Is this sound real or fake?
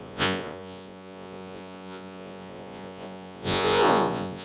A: fake